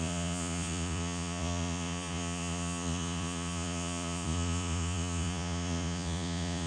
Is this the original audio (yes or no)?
no